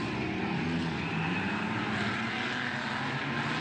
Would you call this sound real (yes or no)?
yes